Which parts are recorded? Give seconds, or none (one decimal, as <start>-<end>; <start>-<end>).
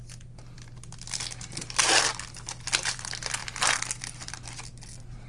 0.0-5.3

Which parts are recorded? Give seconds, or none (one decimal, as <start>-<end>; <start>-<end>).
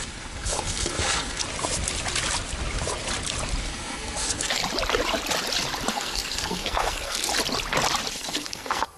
1.4-3.6; 4.6-5.9; 7.3-8.1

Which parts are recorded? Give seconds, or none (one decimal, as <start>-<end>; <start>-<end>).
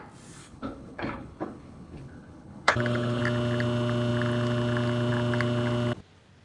0.0-0.4; 3.2-6.4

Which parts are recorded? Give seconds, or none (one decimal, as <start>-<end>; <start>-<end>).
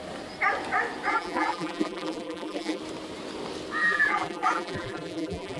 0.0-1.1; 2.8-3.8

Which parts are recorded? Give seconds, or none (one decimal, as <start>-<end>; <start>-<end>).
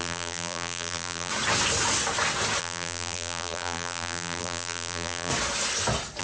1.3-2.6; 5.3-6.2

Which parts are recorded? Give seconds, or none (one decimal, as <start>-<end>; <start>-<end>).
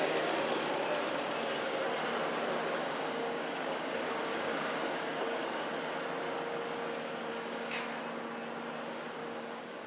0.0-2.8; 5.7-7.3; 7.8-9.2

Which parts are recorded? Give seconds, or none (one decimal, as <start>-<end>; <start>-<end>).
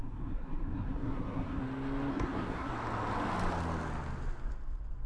1.6-2.1; 2.7-5.1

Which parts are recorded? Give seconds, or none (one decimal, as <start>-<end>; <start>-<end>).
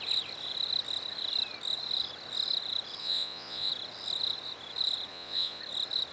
0.0-3.0; 3.7-5.1; 5.6-6.1